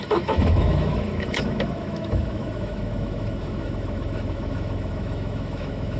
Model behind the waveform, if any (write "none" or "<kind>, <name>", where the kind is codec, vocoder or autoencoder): autoencoder, DAC-VAE